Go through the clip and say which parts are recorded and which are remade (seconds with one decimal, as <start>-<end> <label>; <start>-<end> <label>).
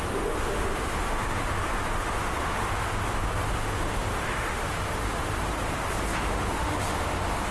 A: 0.0-1.4 remade; 1.4-2.0 recorded; 2.0-2.6 remade; 2.6-3.5 recorded; 3.5-5.2 remade; 5.2-6.3 recorded; 6.3-7.5 remade